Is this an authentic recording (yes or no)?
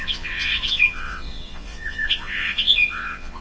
no